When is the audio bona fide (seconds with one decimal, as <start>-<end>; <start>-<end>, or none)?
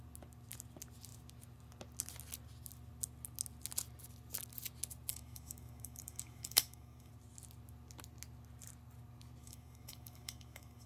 0.0-5.1; 7.1-9.4